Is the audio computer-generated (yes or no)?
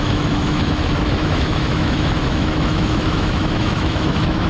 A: yes